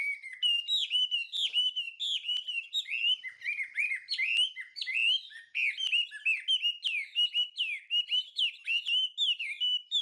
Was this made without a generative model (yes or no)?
yes